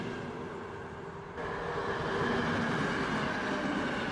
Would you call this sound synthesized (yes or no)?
no